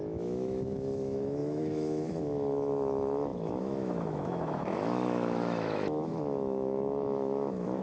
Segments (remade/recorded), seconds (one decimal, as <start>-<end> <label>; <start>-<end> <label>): 0.0-7.8 remade